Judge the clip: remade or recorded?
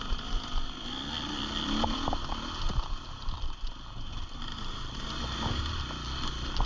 recorded